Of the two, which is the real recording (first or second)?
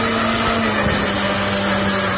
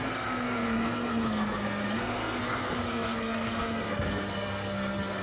first